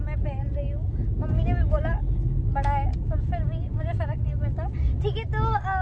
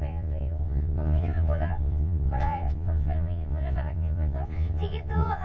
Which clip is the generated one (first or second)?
second